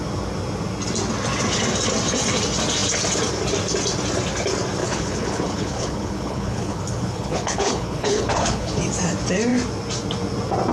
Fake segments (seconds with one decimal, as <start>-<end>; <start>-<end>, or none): 4.8-8.8